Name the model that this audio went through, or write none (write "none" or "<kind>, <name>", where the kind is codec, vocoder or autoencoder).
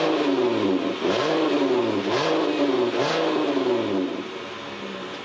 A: none